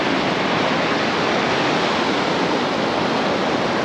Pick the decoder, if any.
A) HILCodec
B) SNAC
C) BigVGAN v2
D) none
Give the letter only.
D